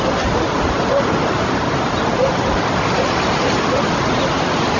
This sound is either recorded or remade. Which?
recorded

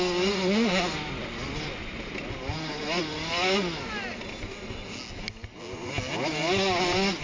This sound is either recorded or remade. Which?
recorded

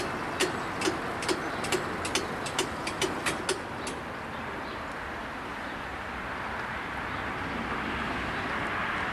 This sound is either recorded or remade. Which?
recorded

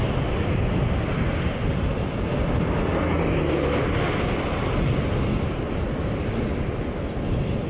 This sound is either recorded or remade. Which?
recorded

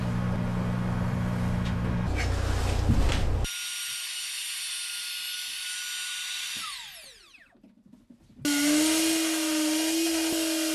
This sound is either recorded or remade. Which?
recorded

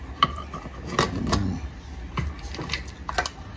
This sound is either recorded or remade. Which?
recorded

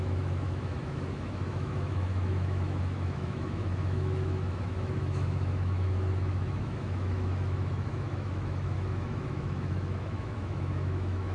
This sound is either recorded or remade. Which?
remade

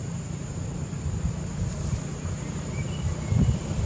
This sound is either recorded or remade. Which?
recorded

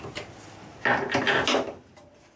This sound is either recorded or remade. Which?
recorded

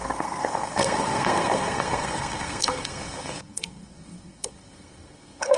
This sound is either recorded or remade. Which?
remade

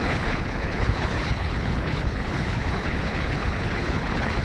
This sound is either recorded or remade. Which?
remade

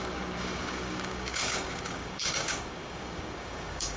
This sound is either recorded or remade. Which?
remade